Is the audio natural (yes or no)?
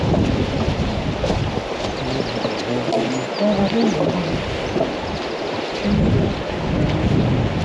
yes